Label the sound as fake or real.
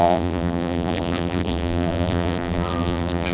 fake